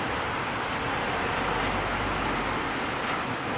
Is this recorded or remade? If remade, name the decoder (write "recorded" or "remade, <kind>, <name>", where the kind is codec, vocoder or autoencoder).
recorded